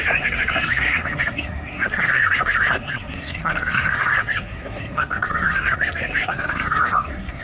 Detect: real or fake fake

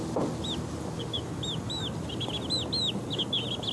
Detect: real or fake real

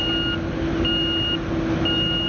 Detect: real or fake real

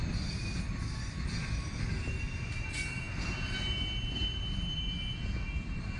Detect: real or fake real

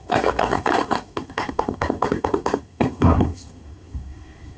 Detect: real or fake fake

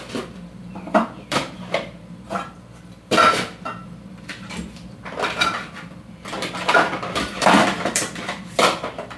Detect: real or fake fake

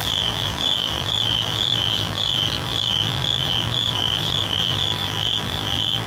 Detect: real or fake fake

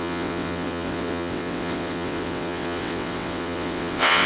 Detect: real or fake fake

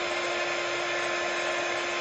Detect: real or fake real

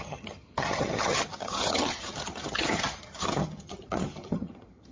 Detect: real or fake fake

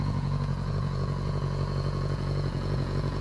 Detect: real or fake fake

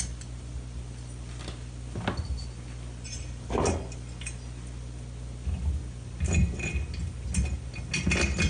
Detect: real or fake real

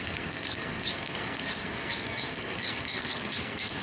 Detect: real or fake fake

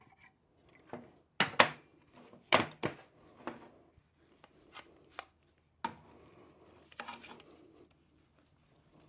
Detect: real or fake real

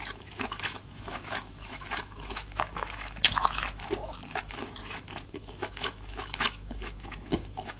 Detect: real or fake fake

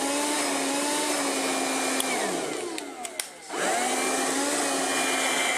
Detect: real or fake real